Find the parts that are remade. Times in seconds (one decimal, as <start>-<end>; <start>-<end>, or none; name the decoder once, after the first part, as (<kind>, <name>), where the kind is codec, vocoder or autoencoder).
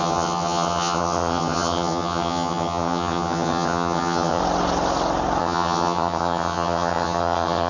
0.0-4.4 (vocoder, HiFi-GAN); 5.4-7.7